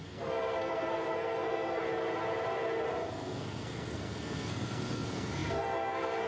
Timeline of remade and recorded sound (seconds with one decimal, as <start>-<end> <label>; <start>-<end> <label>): 0.0-1.8 remade; 1.8-3.1 recorded; 3.1-6.3 remade